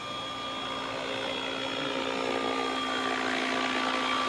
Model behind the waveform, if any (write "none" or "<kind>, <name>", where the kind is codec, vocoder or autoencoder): none